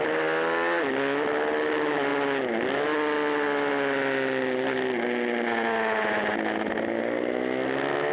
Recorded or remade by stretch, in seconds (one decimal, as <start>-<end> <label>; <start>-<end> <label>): 0.0-8.1 recorded